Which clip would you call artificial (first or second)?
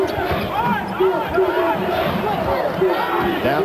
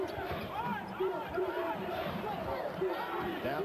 second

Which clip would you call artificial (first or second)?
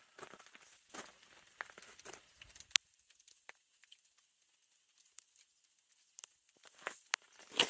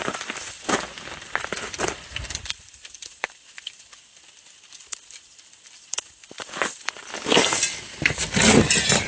second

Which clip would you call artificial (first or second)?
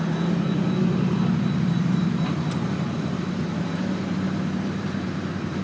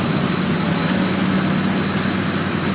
first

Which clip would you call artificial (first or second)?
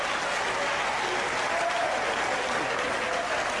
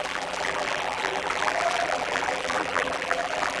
second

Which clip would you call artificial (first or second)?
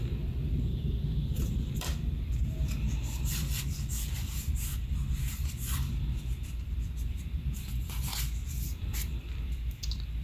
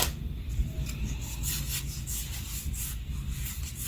first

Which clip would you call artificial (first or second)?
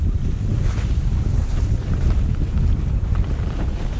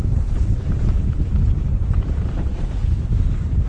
second